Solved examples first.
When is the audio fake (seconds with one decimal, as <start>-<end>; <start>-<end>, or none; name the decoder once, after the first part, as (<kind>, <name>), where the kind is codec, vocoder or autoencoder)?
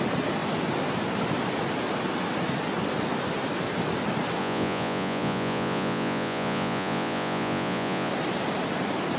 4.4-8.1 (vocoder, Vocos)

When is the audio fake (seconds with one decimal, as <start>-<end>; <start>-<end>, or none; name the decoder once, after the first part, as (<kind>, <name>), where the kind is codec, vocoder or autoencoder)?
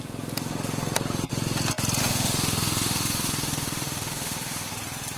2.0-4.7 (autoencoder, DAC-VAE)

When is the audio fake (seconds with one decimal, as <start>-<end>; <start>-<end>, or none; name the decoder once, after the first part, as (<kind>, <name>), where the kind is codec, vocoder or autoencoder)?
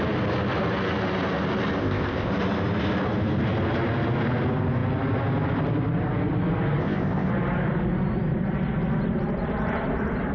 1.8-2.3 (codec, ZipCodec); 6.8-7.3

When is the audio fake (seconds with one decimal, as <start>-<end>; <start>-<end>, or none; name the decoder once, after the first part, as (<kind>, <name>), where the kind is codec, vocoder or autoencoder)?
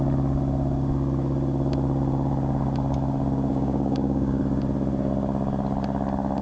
3.5-4.4 (codec, DAC)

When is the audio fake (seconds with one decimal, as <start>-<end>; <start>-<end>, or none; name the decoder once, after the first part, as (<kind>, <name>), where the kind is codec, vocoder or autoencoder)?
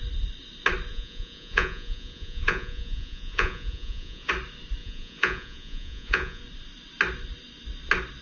0.9-4.3 (vocoder, Vocos); 4.8-6.4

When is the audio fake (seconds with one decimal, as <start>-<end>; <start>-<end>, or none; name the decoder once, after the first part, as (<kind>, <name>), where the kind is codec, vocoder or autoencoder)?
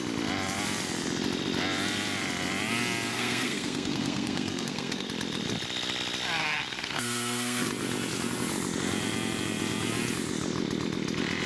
3.1-5.1 (codec, SNAC); 6.4-7.7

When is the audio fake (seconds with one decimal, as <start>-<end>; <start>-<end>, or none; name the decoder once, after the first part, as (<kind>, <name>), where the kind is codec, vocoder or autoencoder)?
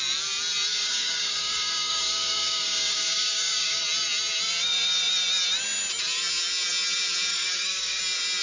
0.7-3.8 (codec, DAC); 7.3-8.0